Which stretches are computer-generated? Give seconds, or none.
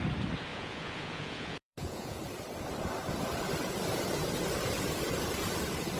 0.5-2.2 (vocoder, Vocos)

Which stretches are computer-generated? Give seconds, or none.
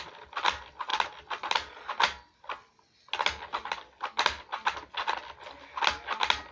none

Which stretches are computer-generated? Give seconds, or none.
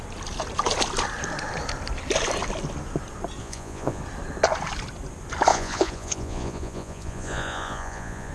3.4-4.0 (vocoder, Vocos); 5.5-8.3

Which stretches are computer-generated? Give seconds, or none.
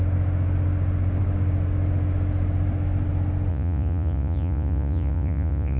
3.5-5.8 (vocoder, Vocos)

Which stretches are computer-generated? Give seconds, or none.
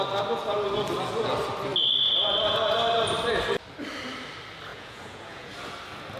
4.7-5.5 (vocoder, Vocos)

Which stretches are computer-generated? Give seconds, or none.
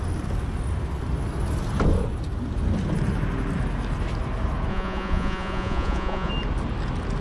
4.7-6.3 (vocoder, Vocos)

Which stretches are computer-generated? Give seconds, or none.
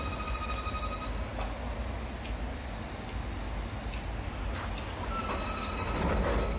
none